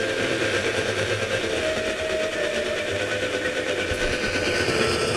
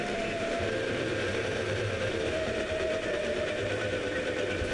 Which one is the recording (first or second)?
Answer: first